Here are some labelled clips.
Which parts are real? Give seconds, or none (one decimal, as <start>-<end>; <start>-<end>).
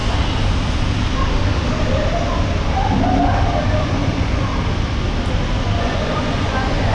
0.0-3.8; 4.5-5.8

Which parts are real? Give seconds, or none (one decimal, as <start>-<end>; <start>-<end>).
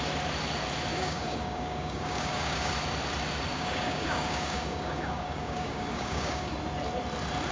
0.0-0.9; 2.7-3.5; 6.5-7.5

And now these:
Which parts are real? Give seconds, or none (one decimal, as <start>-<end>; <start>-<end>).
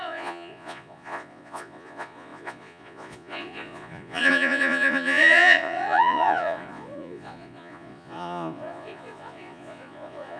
none